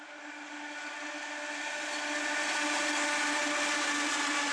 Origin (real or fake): real